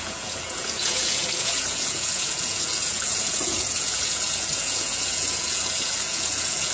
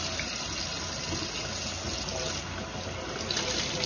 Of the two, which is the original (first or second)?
second